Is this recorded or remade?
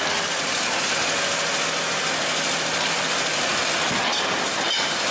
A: recorded